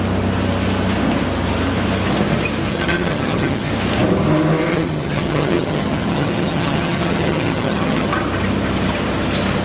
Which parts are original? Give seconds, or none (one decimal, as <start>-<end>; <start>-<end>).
0.0-2.7; 3.7-4.7; 8.1-9.6